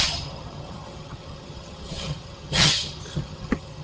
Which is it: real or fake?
fake